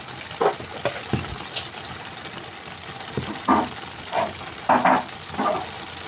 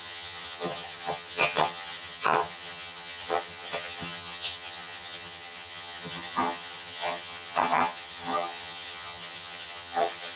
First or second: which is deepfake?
second